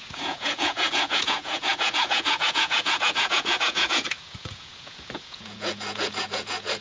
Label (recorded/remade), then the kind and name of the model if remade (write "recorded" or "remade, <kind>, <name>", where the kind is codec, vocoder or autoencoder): remade, vocoder, Vocos